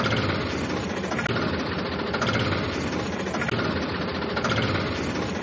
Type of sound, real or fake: real